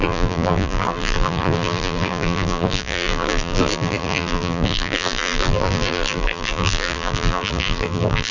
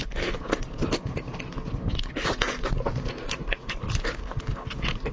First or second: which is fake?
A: first